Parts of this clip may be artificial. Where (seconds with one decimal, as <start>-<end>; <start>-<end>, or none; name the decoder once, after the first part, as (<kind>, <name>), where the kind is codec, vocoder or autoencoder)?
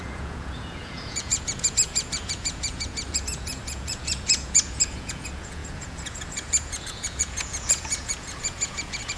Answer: 0.0-9.2 (vocoder, Vocos)